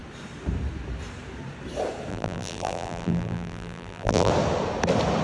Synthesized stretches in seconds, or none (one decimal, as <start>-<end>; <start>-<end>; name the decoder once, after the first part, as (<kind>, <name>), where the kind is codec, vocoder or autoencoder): 2.1-4.3 (vocoder, BigVGAN v2)